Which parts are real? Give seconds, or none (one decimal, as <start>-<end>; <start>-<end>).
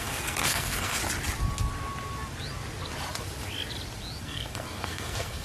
1.0-4.2